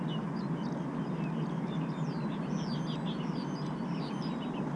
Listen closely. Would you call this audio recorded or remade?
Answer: recorded